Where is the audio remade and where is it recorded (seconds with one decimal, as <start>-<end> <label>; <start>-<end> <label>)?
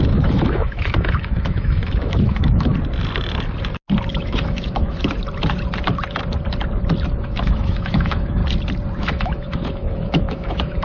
0.0-2.7 remade; 2.7-4.1 recorded; 4.1-5.2 remade; 5.2-7.2 recorded; 7.2-8.4 remade; 8.4-9.0 recorded; 9.0-10.8 remade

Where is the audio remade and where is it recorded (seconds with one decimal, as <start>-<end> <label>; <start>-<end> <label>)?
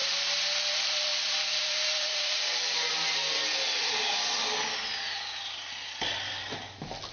0.0-0.7 recorded; 0.7-3.4 remade; 3.4-7.1 recorded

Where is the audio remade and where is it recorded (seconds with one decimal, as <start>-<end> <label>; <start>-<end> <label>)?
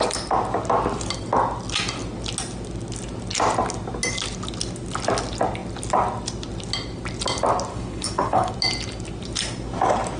0.0-7.7 recorded; 7.7-8.5 remade; 8.5-10.2 recorded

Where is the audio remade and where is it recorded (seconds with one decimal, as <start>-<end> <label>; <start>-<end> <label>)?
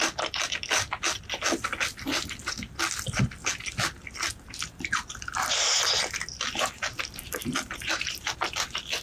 0.0-7.4 recorded; 7.4-8.4 remade; 8.4-9.0 recorded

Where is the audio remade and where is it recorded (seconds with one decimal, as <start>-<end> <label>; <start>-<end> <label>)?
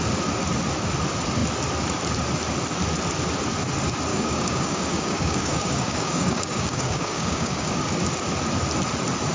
0.0-4.1 recorded; 4.1-7.8 remade; 7.8-9.3 recorded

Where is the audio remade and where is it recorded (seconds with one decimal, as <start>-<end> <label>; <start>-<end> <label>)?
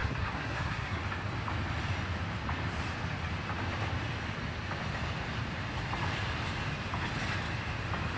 0.0-1.0 remade; 1.0-8.2 recorded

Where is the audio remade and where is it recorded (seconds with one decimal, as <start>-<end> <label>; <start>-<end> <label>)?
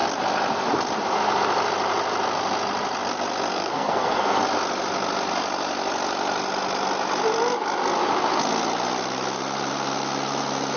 0.0-3.5 recorded; 3.5-4.4 remade; 4.4-10.8 recorded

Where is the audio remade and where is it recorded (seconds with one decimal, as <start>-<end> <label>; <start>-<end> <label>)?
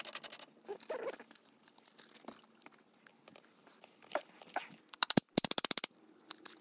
0.0-6.6 recorded